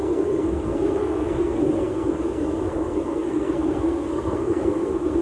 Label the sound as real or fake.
fake